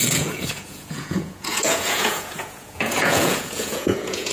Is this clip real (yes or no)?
no